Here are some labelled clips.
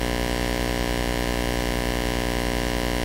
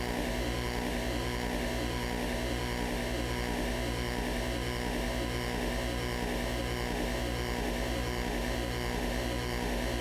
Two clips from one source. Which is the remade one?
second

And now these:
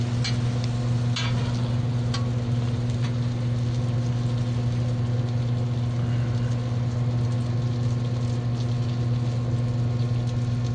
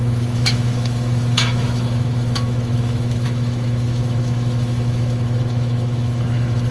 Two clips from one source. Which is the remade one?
second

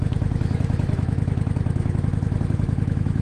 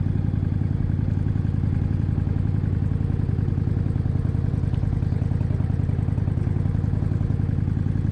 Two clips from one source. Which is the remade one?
first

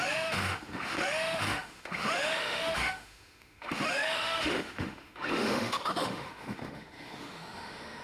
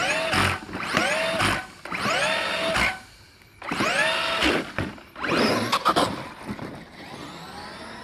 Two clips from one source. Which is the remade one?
first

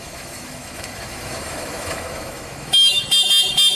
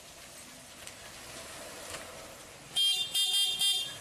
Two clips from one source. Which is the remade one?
first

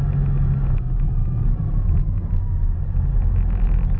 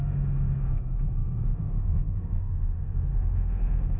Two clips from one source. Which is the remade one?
second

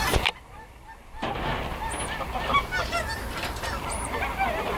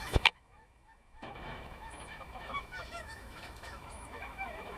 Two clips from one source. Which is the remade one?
second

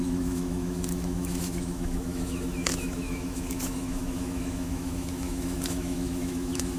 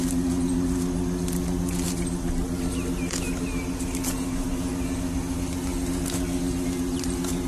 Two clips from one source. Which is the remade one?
first